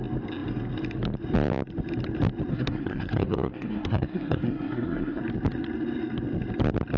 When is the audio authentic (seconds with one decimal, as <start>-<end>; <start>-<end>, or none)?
0.0-2.5; 5.2-7.0